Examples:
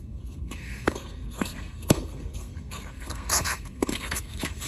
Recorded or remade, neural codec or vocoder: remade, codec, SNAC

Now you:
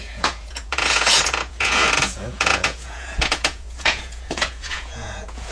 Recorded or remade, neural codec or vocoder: remade, vocoder, Vocos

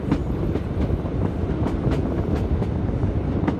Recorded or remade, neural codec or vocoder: recorded